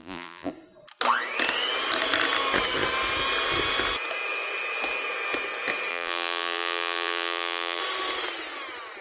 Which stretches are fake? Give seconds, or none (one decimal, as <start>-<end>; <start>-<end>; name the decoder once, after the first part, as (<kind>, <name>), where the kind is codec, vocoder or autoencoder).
0.0-0.5 (vocoder, BigVGAN v2); 5.9-7.8